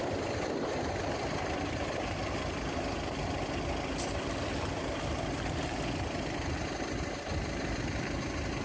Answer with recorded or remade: recorded